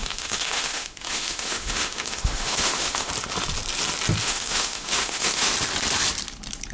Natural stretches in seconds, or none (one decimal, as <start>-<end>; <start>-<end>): 3.1-4.2; 5.5-6.7